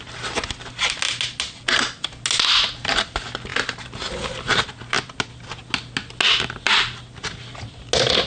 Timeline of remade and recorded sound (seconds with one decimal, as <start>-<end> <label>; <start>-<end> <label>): 0.0-8.3 recorded